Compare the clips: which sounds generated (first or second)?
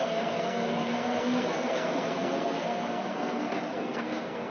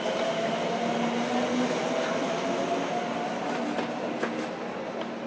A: first